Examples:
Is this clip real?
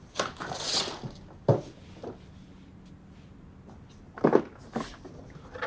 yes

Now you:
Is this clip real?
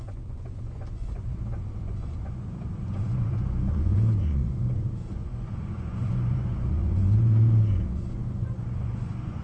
no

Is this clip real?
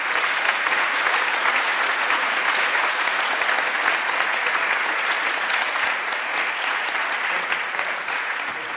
no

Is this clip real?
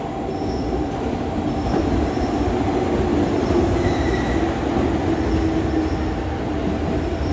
yes